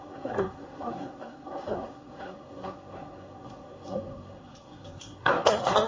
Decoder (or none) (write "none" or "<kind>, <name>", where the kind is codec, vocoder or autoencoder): codec, SNAC